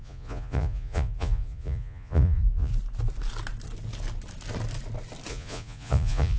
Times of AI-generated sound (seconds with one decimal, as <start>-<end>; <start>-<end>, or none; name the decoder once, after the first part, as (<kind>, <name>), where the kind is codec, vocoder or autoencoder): 0.0-2.7 (vocoder, Vocos); 5.3-6.4